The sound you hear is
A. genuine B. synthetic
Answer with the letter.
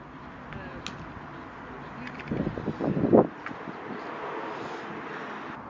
A